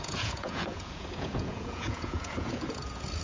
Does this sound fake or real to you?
fake